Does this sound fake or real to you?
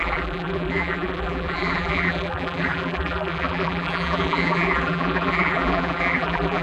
fake